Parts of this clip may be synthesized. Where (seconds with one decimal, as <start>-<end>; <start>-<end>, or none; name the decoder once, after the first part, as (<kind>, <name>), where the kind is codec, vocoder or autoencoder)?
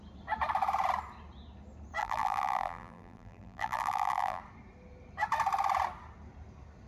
2.0-4.4 (vocoder, BigVGAN v2)